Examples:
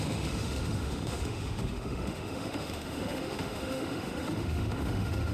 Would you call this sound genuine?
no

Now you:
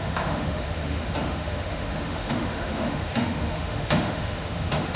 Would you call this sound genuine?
no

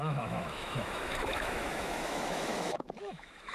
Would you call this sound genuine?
no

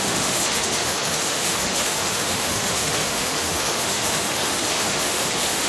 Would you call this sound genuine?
no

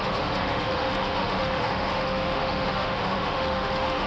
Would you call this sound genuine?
no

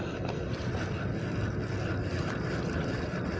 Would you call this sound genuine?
yes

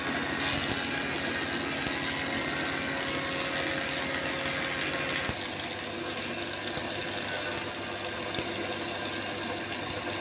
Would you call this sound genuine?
yes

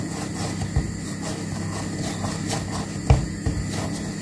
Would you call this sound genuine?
yes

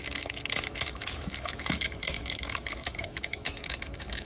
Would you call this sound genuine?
no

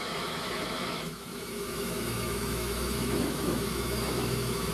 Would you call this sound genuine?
no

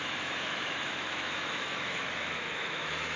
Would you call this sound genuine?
no